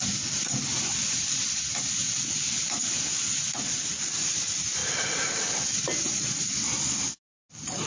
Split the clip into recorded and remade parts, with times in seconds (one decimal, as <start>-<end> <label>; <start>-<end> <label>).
0.0-7.9 recorded